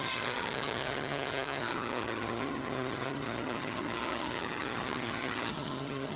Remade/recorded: remade